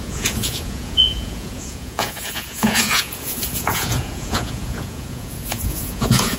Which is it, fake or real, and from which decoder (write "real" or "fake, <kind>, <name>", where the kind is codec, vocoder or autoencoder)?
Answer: fake, vocoder, Vocos